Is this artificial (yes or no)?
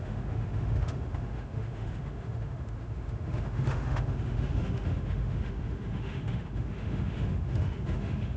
yes